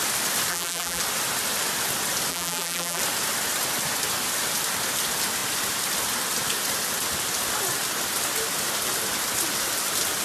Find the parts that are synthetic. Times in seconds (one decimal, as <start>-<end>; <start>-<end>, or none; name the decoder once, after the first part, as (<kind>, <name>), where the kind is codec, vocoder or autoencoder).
0.5-1.0 (vocoder, BigVGAN v2); 2.3-3.0